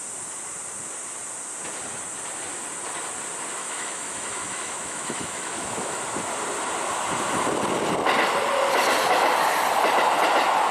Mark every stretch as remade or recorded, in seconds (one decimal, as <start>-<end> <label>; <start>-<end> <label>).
0.0-3.6 recorded; 3.6-6.0 remade; 6.0-10.7 recorded